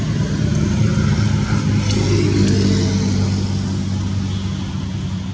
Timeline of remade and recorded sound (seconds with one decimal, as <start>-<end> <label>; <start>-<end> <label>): 0.0-5.3 recorded